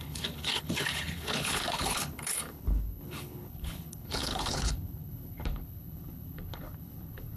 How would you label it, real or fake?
fake